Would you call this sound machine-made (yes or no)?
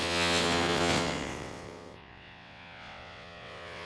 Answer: yes